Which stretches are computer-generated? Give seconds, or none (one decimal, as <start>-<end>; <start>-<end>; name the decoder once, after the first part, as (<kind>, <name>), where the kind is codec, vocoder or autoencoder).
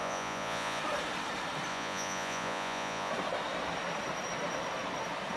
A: 0.0-0.8 (vocoder, Vocos); 1.7-3.1